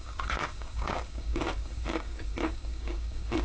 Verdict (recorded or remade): remade